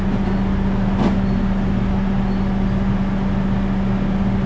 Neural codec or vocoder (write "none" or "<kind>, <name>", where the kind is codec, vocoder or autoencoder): none